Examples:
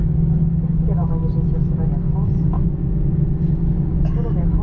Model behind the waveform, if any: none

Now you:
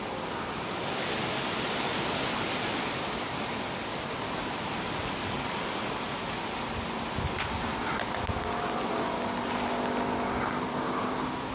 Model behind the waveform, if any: none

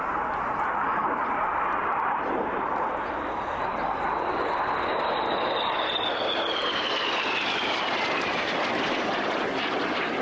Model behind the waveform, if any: none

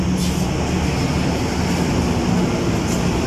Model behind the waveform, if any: none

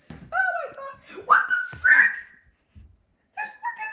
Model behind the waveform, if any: none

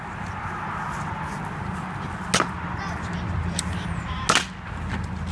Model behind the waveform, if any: none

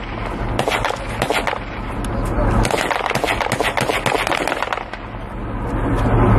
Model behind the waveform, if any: none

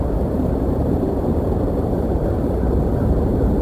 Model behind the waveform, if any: vocoder, BigVGAN v2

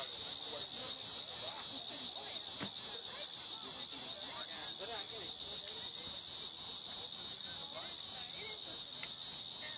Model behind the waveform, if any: none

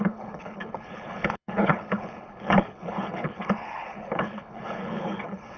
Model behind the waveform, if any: codec, HILCodec